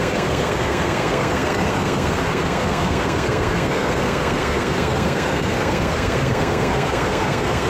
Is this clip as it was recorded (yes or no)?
no